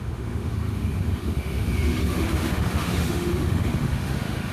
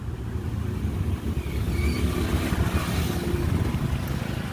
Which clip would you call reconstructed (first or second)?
first